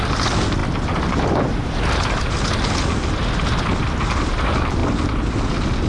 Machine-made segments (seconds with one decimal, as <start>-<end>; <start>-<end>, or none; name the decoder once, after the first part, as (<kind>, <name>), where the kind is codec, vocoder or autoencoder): none